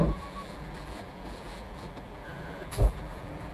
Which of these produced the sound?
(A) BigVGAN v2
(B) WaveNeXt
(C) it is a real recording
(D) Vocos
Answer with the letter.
A